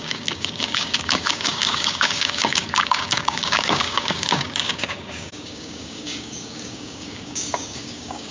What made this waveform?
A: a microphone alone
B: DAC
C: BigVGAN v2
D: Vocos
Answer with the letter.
B